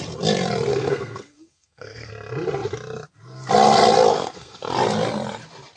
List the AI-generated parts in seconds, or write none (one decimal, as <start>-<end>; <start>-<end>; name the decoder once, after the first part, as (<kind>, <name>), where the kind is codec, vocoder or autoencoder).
0.7-2.1 (codec, SNAC); 4.1-4.7